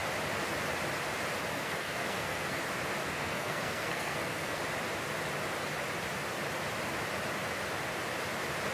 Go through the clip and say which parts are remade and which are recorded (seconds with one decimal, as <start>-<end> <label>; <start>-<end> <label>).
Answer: 0.0-1.5 recorded; 1.5-2.6 remade; 2.6-3.0 recorded; 3.0-4.6 remade; 4.6-8.7 recorded